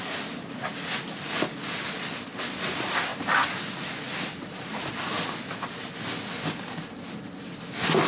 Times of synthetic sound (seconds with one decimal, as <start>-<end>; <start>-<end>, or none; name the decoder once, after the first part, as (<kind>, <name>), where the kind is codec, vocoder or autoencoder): 3.1-5.0 (vocoder, BigVGAN v2)